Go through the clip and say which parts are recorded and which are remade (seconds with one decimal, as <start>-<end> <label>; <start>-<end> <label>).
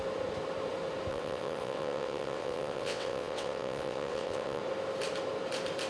0.0-1.1 recorded; 1.1-4.6 remade; 4.6-5.9 recorded